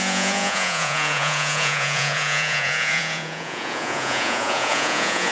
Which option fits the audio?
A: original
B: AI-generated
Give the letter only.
B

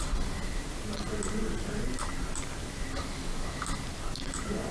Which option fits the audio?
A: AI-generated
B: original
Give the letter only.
B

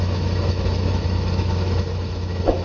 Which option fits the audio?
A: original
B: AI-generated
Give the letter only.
B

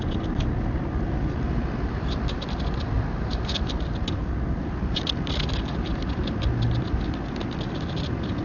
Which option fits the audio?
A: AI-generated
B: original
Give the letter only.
B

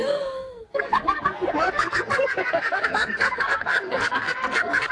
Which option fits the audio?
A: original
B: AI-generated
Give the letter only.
B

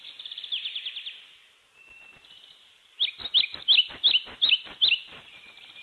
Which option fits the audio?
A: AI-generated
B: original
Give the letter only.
B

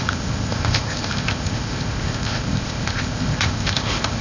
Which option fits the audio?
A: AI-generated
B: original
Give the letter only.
A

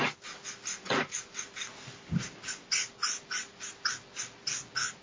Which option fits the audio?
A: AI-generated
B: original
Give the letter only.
B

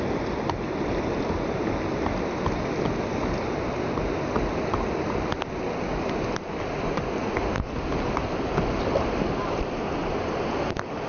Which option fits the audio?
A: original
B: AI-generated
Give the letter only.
A